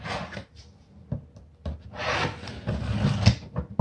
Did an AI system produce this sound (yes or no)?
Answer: no